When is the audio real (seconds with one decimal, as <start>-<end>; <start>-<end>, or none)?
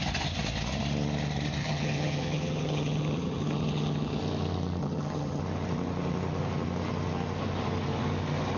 0.0-1.6; 4.2-4.8; 5.4-8.6